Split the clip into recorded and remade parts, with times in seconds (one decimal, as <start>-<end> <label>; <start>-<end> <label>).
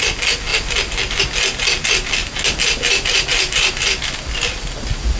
0.0-5.2 recorded